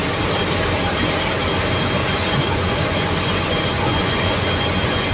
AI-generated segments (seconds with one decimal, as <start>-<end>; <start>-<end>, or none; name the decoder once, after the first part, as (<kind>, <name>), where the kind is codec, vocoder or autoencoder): 2.0-5.1 (vocoder, Vocos)

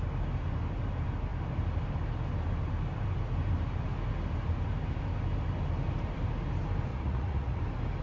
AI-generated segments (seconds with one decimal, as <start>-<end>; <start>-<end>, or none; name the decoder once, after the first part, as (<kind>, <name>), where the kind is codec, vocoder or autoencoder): 6.9-7.6 (vocoder, Vocos)